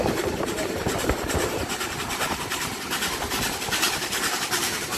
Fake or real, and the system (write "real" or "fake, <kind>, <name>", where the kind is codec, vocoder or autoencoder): fake, vocoder, BigVGAN v2